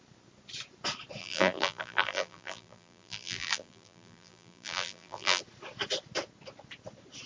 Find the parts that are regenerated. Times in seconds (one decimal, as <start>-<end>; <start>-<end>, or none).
1.2-5.4